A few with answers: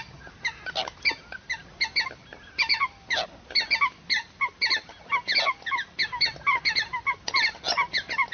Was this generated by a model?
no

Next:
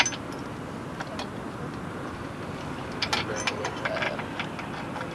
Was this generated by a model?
no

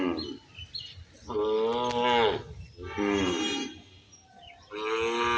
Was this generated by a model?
no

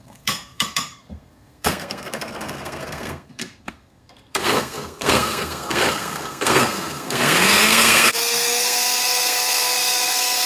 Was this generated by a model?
yes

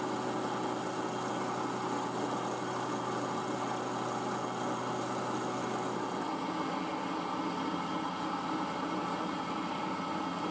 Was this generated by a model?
no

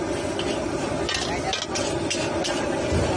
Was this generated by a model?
no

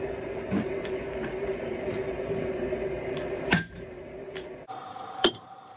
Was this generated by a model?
yes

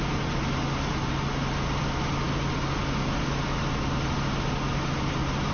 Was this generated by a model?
no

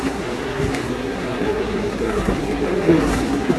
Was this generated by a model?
yes